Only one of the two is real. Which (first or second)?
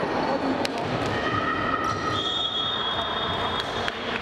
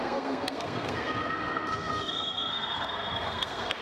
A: first